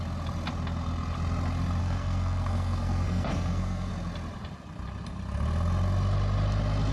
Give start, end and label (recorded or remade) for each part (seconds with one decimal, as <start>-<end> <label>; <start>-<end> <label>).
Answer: 0.0-1.8 recorded; 1.8-3.9 remade; 3.9-6.9 recorded